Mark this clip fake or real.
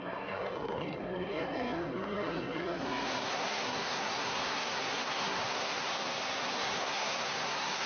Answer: fake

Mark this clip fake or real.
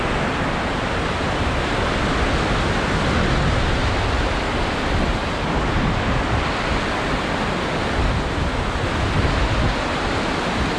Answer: real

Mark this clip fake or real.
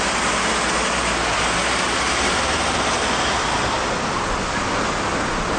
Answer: real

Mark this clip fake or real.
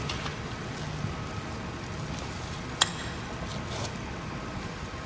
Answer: real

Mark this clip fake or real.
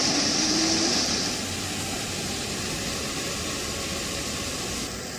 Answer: real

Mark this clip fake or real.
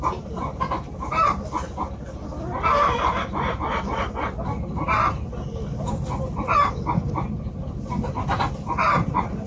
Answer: real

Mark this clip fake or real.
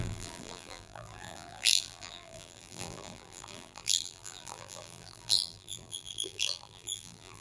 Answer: fake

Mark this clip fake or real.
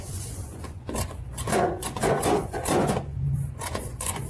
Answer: fake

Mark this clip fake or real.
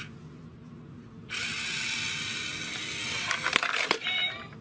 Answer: real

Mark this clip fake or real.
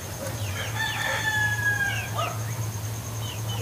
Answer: real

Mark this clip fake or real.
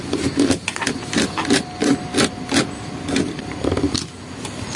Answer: real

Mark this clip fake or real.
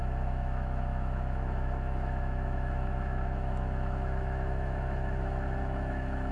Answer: fake